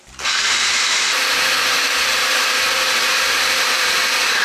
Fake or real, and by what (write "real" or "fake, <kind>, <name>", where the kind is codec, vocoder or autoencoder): fake, vocoder, BigVGAN v2